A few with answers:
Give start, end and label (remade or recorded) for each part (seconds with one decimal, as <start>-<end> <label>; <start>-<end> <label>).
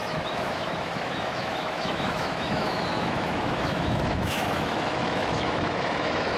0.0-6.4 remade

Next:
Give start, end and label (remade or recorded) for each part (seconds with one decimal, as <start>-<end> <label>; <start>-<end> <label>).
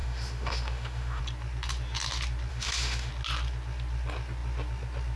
0.0-1.2 remade; 1.2-2.5 recorded; 2.5-3.1 remade; 3.1-5.2 recorded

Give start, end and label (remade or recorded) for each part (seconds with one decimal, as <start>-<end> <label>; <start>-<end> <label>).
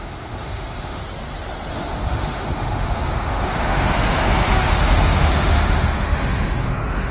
0.0-1.0 remade; 1.0-1.7 recorded; 1.7-7.1 remade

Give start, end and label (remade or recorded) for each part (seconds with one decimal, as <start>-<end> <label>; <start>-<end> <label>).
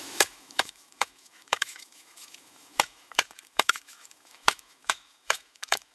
0.0-5.9 remade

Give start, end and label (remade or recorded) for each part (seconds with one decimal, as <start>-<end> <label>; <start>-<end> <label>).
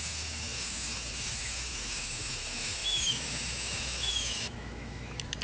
0.0-5.4 remade